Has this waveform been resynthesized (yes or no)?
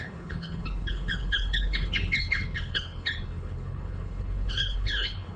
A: yes